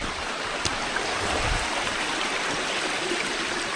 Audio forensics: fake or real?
fake